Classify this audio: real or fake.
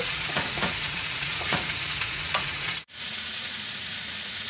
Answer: fake